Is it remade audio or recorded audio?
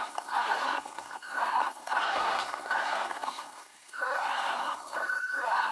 remade